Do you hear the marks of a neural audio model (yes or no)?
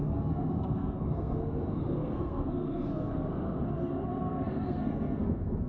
yes